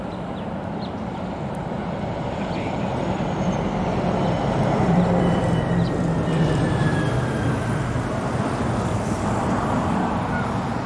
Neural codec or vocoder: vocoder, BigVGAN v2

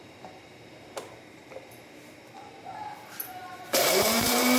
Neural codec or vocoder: vocoder, BigVGAN v2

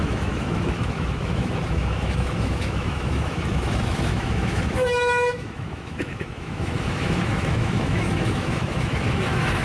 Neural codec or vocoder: autoencoder, DAC-VAE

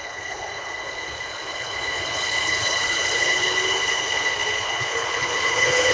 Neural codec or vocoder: codec, HILCodec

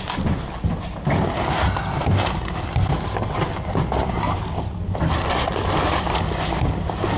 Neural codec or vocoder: none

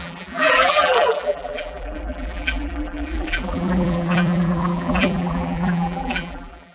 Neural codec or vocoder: vocoder, BigVGAN v2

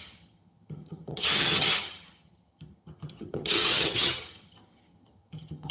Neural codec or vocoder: vocoder, HiFi-GAN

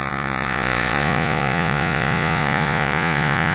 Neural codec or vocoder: vocoder, Vocos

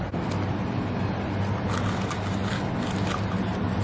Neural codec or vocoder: none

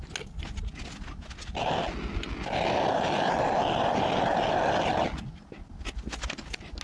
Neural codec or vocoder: none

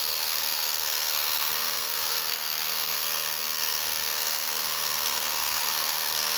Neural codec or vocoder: codec, SNAC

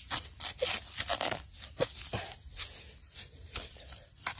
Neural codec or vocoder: none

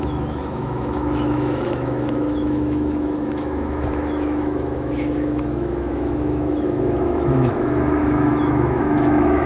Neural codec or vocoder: autoencoder, DAC-VAE